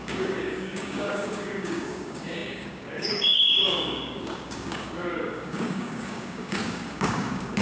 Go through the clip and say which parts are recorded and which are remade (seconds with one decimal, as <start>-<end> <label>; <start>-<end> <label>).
0.0-7.6 remade

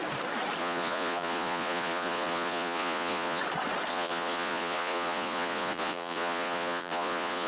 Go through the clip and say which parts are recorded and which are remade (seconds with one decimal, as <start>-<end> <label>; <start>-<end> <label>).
0.0-0.6 recorded; 0.6-3.4 remade; 3.4-3.9 recorded; 3.9-7.5 remade

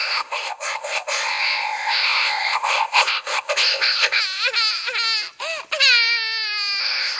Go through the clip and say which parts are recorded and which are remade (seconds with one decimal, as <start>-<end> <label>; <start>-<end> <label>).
0.0-4.2 remade; 4.2-6.8 recorded; 6.8-7.2 remade

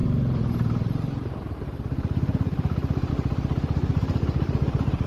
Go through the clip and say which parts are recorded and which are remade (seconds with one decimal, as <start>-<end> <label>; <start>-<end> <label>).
0.0-3.1 remade; 3.1-3.9 recorded; 3.9-5.1 remade

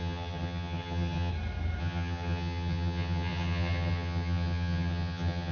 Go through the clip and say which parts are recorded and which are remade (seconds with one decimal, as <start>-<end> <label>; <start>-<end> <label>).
0.0-1.3 remade; 1.3-1.8 recorded; 1.8-5.5 remade

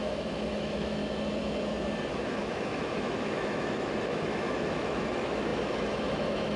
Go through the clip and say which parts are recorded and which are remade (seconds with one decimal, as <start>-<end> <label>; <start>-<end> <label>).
0.0-1.0 remade; 1.0-2.1 recorded; 2.1-6.6 remade

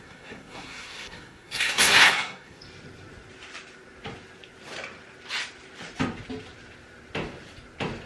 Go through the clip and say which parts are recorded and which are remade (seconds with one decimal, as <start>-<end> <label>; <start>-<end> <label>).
0.0-2.6 remade; 2.6-8.1 recorded

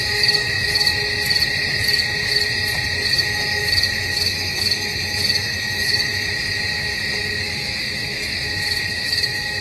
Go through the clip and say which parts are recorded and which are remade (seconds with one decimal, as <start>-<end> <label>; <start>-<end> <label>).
0.0-0.9 remade; 0.9-3.1 recorded; 3.1-9.6 remade